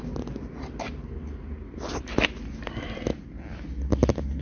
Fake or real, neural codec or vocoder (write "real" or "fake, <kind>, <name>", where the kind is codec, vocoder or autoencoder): real